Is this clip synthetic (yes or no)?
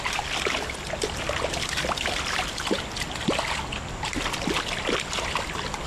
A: no